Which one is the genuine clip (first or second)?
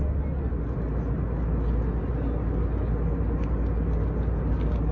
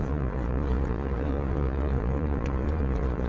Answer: first